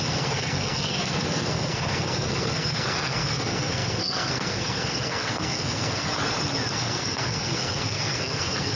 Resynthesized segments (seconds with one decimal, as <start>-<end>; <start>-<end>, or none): 0.0-6.1; 6.7-8.8